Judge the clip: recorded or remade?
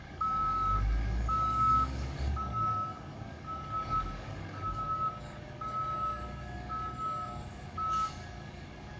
remade